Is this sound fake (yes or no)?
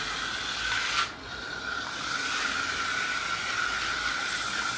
yes